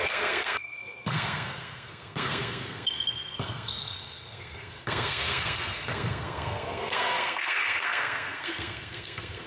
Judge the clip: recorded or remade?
remade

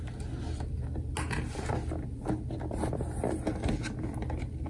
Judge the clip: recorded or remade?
recorded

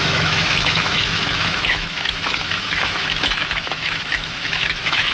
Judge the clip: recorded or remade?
remade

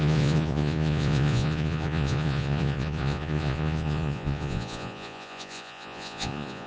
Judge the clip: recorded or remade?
remade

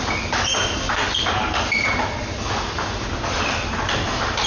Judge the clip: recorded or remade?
recorded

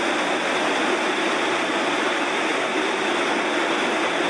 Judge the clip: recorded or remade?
recorded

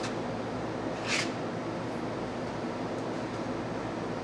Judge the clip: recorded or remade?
recorded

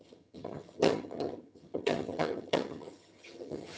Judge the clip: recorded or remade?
remade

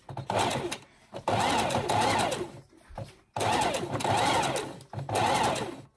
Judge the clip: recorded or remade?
recorded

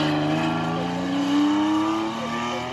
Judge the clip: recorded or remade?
recorded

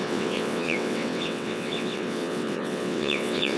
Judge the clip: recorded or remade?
remade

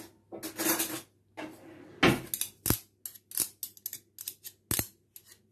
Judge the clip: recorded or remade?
recorded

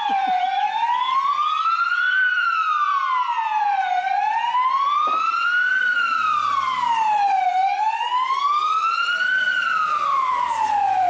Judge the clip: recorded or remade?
recorded